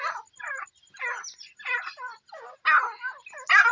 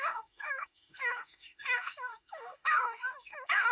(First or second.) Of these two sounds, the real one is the first